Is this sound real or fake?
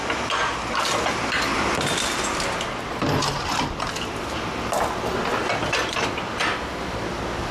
real